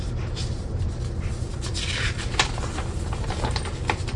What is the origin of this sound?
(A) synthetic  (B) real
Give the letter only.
B